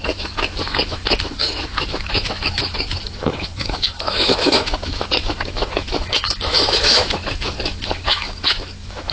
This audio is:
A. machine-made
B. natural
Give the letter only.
A